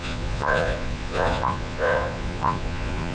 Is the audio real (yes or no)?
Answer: no